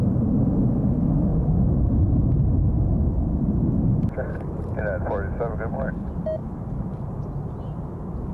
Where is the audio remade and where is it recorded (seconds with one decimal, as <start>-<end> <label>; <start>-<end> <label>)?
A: 0.0-1.3 recorded; 1.3-3.0 remade; 3.0-6.4 recorded; 6.4-7.1 remade; 7.1-8.3 recorded